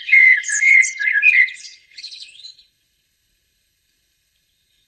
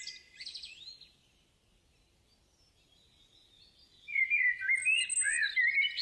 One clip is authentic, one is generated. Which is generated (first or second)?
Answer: first